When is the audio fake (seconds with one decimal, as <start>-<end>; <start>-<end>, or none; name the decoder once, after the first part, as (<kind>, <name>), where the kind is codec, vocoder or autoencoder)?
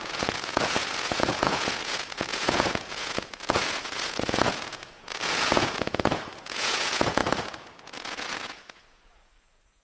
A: 0.0-9.8 (vocoder, Vocos)